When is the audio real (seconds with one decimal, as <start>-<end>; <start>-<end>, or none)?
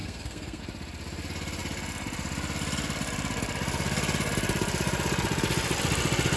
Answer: 0.6-6.4